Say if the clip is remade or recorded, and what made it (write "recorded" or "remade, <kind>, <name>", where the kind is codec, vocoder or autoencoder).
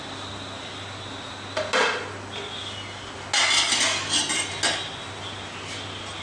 recorded